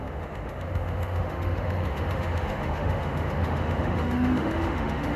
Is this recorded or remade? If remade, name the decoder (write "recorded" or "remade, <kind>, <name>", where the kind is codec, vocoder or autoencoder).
remade, autoencoder, DAC-VAE